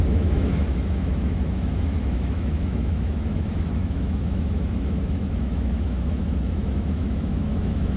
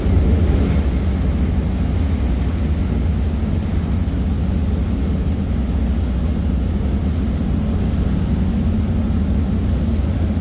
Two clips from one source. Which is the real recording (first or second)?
second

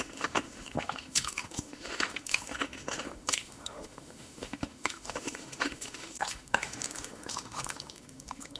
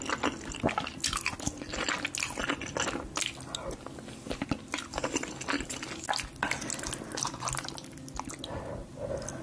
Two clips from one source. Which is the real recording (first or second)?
second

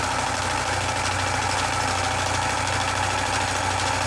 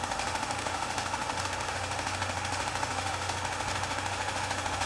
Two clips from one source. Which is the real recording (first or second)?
first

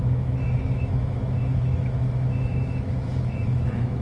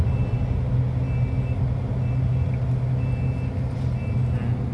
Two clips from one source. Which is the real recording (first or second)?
second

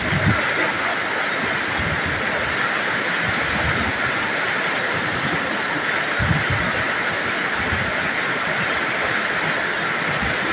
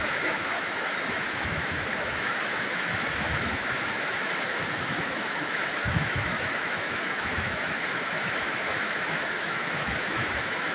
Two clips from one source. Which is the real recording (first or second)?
first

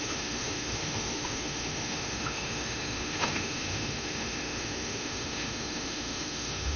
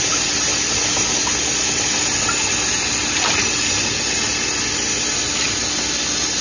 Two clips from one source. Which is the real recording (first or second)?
second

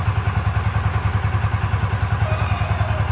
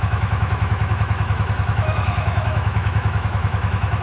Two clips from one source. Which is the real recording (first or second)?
first